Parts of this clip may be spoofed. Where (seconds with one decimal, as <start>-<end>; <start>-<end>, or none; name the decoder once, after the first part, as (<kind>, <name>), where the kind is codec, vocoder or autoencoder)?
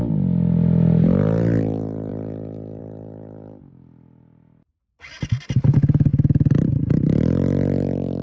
none